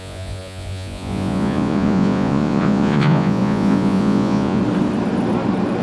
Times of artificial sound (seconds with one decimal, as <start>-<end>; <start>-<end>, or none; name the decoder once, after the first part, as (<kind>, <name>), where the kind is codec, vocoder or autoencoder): 0.0-4.6 (vocoder, Vocos)